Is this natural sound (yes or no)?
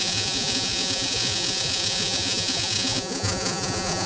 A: no